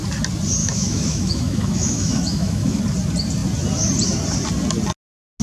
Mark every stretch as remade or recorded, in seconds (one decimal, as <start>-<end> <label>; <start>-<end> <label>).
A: 0.0-0.6 recorded; 0.6-2.8 remade; 2.8-5.4 recorded